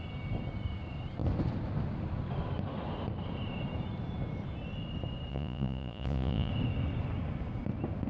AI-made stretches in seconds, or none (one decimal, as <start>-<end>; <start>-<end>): 5.3-6.5